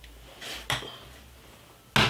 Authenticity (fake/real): real